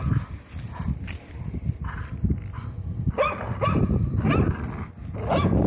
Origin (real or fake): real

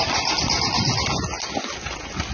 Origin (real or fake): real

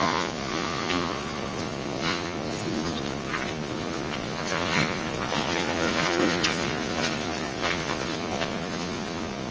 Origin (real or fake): fake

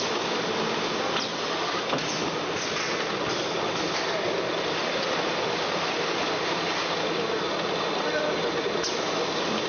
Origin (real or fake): real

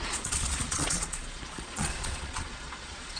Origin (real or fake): fake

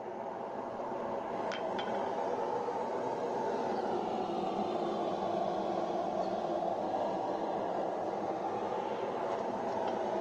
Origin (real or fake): real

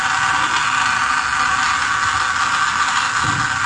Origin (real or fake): real